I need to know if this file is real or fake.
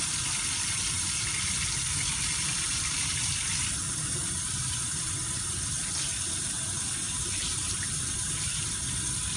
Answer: real